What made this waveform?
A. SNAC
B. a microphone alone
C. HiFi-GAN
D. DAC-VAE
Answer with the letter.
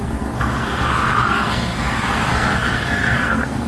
A